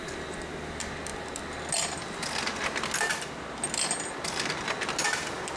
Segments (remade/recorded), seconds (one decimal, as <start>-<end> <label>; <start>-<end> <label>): 0.0-5.6 recorded